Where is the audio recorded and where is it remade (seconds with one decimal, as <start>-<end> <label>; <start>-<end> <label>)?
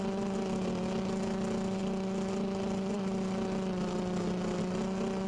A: 0.0-5.3 recorded